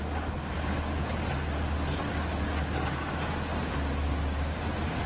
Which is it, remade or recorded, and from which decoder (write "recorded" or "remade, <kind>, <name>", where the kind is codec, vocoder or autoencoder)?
recorded